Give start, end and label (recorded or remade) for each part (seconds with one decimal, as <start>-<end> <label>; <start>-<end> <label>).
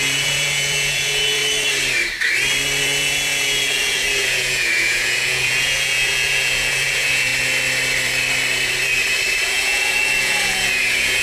0.0-1.4 remade; 1.4-2.8 recorded; 2.8-7.3 remade; 7.3-9.4 recorded; 9.4-11.2 remade